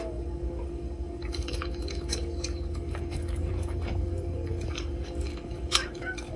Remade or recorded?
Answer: remade